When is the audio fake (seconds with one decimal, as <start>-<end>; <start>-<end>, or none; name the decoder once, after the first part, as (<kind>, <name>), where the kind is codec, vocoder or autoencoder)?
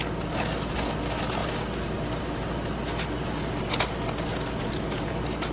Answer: none